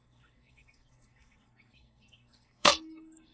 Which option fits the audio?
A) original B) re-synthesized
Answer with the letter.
B